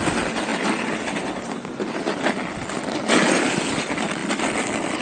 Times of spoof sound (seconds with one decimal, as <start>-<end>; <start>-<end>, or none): none